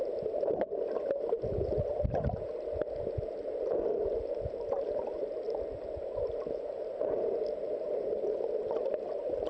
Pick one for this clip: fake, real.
real